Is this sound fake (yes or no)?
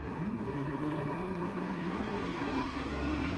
yes